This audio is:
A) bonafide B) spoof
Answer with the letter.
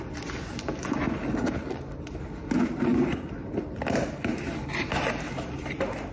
A